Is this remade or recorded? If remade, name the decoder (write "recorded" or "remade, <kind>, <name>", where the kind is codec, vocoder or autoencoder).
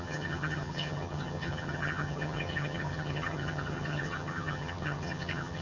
remade, vocoder, HiFi-GAN